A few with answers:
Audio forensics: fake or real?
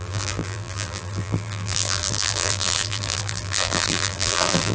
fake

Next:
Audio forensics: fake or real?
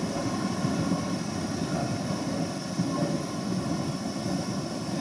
real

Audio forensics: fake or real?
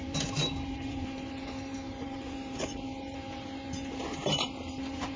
fake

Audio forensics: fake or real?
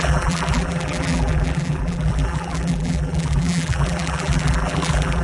fake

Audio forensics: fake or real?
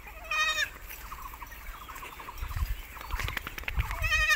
real